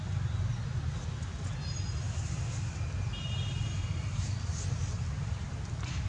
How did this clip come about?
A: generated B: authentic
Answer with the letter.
B